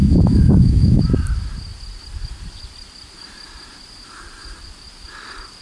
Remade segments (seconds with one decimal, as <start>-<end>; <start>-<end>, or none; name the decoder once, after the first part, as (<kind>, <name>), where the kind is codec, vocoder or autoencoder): 0.0-1.0 (autoencoder, DAC-VAE)